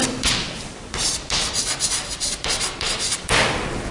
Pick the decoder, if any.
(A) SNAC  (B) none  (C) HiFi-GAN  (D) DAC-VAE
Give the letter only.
B